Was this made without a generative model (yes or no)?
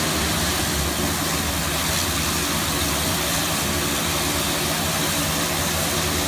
yes